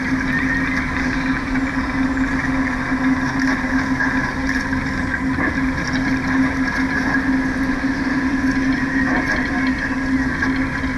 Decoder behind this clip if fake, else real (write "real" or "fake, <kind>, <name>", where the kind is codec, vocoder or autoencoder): real